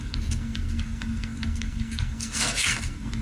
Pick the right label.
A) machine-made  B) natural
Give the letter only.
A